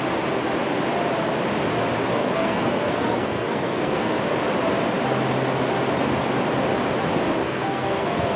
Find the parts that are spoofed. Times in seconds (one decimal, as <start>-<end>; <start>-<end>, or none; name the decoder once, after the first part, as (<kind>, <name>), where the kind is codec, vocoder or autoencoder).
2.2-4.2 (codec, SNAC); 7.4-8.4

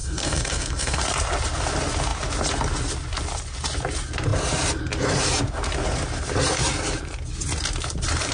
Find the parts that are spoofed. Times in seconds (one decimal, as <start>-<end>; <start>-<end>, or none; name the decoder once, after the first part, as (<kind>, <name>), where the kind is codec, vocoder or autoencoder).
0.0-1.0 (codec, SNAC)

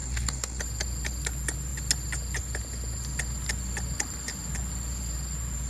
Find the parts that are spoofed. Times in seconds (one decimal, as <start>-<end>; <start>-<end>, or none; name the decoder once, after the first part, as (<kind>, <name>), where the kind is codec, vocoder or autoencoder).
0.0-0.6 (codec, SNAC)